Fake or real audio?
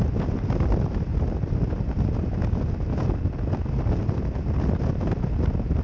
real